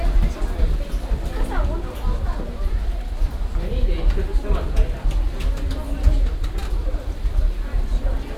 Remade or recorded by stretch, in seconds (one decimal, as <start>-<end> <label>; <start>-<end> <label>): 0.0-8.4 recorded

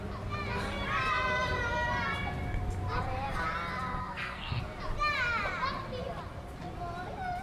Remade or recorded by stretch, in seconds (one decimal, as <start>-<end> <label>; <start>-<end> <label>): 0.0-4.0 recorded; 4.0-4.6 remade; 4.6-7.4 recorded

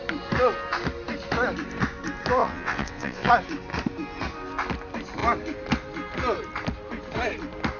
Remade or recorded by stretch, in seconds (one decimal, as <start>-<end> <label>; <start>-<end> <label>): 0.0-2.4 recorded; 2.4-3.3 remade; 3.3-7.8 recorded

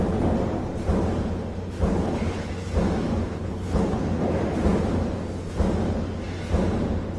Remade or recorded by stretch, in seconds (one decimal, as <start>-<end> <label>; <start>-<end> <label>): 0.0-1.9 recorded; 1.9-2.5 remade; 2.5-3.1 recorded; 3.1-4.2 remade; 4.2-7.2 recorded

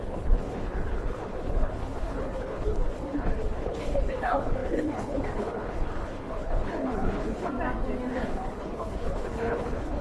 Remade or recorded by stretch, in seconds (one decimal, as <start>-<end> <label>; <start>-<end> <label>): 0.0-7.5 remade; 7.5-8.1 recorded; 8.1-10.0 remade

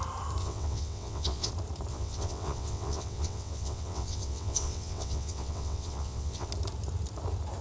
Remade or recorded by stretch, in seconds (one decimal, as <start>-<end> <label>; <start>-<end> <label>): 0.0-0.4 recorded; 0.4-1.5 remade; 1.5-1.9 recorded; 1.9-6.5 remade; 6.5-7.6 recorded

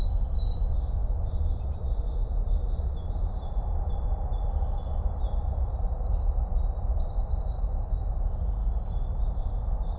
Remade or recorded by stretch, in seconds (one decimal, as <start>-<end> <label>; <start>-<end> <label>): 0.0-8.6 recorded; 8.6-9.2 remade; 9.2-10.0 recorded